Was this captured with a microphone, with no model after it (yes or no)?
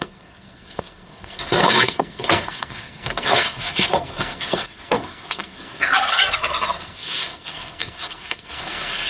no